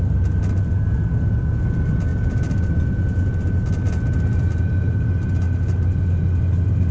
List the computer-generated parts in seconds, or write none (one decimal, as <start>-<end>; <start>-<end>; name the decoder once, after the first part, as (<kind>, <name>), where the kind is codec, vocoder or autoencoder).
none